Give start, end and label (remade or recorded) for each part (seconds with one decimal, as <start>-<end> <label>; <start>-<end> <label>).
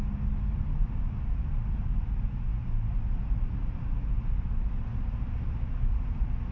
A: 0.0-6.5 recorded